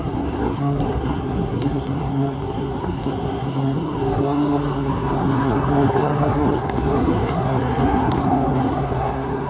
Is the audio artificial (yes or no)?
yes